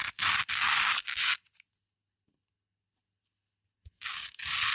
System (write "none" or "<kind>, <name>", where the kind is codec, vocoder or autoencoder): none